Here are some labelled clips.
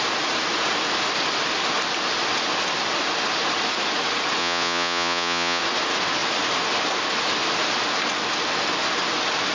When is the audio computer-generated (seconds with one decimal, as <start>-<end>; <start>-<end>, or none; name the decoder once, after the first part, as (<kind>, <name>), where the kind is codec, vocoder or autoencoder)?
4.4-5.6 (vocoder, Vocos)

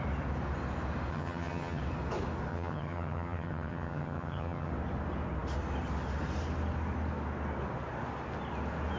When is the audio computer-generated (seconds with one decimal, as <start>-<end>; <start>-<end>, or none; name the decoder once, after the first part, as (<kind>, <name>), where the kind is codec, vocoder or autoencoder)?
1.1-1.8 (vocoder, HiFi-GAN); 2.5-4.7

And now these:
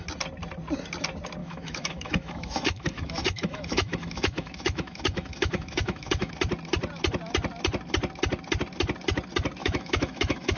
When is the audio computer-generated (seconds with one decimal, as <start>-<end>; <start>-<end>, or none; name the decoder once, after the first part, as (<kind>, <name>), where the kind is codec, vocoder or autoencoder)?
1.4-6.3 (autoencoder, DAC-VAE); 9.6-10.6

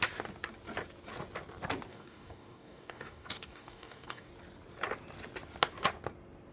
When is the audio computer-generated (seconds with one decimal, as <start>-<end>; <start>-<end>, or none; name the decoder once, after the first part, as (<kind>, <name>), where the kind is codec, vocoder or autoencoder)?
1.9-4.3 (codec, DAC)